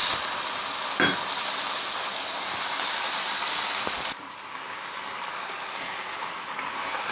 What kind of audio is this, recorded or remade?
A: recorded